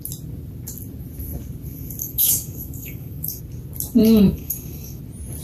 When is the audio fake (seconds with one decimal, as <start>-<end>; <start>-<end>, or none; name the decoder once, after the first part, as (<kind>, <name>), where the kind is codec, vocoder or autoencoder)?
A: 2.0-3.4 (codec, DAC); 4.0-5.0